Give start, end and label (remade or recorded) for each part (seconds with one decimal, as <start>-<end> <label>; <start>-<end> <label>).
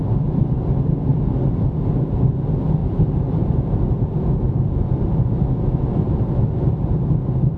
0.0-7.6 recorded